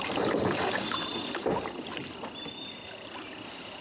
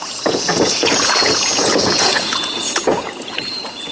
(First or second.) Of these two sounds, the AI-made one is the second